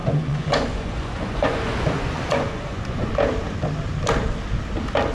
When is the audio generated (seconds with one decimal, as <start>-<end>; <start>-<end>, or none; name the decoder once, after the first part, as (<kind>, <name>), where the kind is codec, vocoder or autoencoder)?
0.0-3.1 (vocoder, Vocos)